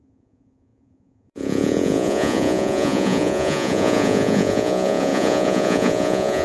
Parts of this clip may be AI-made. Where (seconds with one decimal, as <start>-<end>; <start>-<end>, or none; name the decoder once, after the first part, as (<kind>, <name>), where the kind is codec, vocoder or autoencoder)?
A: 0.0-6.4 (vocoder, Vocos)